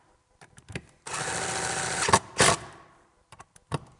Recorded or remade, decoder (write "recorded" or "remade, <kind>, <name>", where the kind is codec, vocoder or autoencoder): remade, vocoder, BigVGAN v2